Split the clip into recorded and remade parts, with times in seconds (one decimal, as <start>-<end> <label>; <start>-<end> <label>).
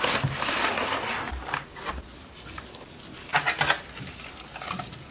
0.0-5.1 recorded